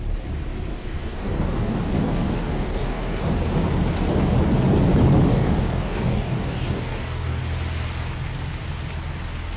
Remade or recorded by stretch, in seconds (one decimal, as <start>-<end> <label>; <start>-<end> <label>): 0.0-0.7 recorded; 0.7-3.2 remade; 3.2-5.3 recorded; 5.3-7.4 remade; 7.4-9.6 recorded

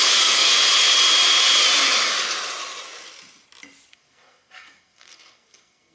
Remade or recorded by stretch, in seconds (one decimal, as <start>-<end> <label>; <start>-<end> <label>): 0.0-0.5 remade; 0.5-3.9 recorded; 3.9-5.9 remade

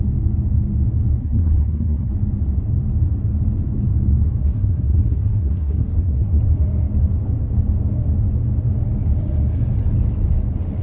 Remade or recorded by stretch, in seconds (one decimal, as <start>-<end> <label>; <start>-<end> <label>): 0.0-1.2 recorded; 1.2-2.1 remade; 2.1-4.4 recorded; 4.4-6.4 remade; 6.4-10.8 recorded

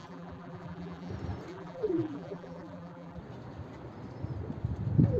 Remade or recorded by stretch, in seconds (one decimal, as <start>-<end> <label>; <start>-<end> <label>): 0.0-1.1 remade; 1.1-1.5 recorded; 1.5-3.2 remade; 3.2-5.2 recorded

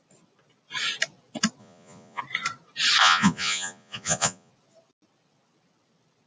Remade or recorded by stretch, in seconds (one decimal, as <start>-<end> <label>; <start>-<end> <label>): 0.0-1.6 recorded; 1.6-2.2 remade; 2.2-3.0 recorded; 3.0-4.5 remade; 4.5-6.3 recorded

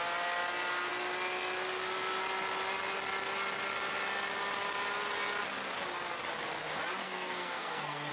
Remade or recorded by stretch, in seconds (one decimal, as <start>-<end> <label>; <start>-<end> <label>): 0.0-7.0 recorded; 7.0-8.1 remade

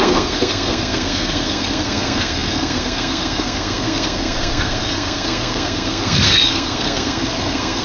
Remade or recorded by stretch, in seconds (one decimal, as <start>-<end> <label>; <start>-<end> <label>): 0.0-7.8 remade

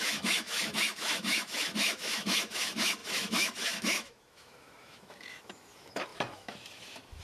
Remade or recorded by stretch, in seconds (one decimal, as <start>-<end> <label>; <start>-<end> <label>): 0.0-7.2 remade